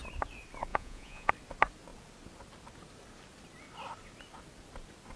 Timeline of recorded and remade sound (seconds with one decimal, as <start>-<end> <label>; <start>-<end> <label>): 0.0-0.7 recorded; 0.7-1.3 remade; 1.3-5.2 recorded

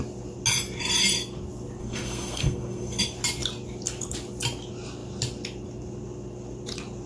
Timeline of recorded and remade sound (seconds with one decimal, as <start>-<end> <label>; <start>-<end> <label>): 0.0-1.8 recorded; 1.8-3.0 remade; 3.0-7.1 recorded

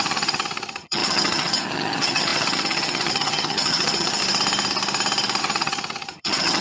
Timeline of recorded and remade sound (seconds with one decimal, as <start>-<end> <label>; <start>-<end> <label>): 0.0-4.2 remade; 4.2-5.4 recorded; 5.4-6.6 remade

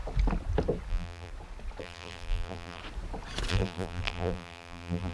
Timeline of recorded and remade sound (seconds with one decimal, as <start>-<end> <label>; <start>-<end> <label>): 0.0-0.9 recorded; 0.9-1.3 remade; 1.3-1.8 recorded; 1.8-2.8 remade; 2.8-3.5 recorded; 3.5-5.1 remade

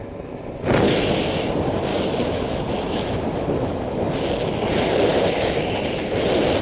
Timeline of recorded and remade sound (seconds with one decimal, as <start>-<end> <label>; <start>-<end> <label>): 0.0-1.9 recorded; 1.9-4.6 remade; 4.6-5.1 recorded; 5.1-5.6 remade; 5.6-6.6 recorded

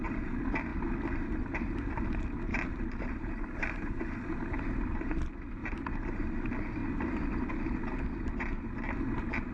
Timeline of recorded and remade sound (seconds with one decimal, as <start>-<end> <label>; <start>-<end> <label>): 0.0-2.5 recorded; 2.5-4.0 remade; 4.0-5.6 recorded; 5.6-6.2 remade; 6.2-9.5 recorded